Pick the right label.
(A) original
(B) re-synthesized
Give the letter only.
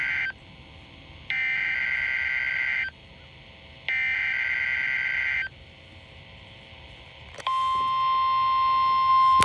A